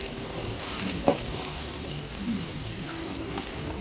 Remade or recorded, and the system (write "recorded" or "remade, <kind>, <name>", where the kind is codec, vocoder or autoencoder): remade, codec, DAC